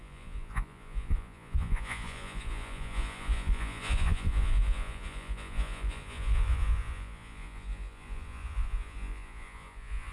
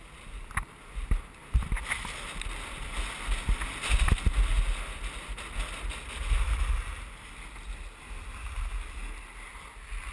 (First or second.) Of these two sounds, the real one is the second